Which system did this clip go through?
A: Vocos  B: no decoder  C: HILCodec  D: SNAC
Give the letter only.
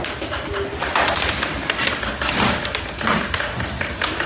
B